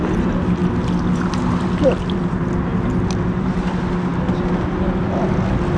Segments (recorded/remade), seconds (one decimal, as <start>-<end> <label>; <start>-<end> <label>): 0.0-5.8 recorded